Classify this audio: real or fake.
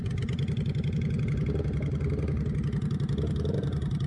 real